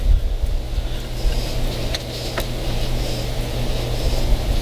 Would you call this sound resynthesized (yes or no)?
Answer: no